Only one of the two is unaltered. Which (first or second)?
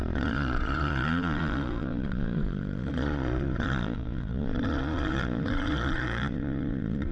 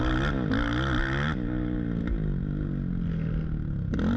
second